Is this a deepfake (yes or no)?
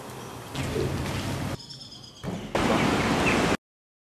no